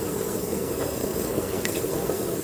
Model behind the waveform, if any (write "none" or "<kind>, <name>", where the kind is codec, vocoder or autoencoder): codec, SNAC